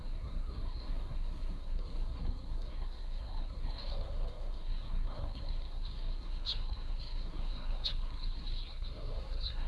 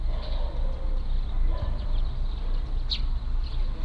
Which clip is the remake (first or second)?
first